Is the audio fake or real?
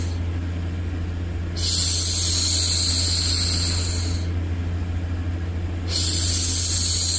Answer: real